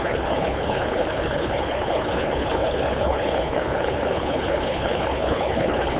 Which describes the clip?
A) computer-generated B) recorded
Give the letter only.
A